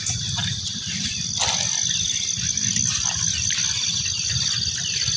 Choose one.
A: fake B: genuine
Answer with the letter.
B